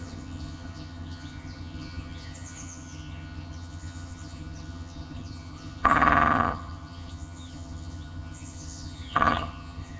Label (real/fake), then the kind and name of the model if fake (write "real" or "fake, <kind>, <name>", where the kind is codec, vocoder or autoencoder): fake, vocoder, HiFi-GAN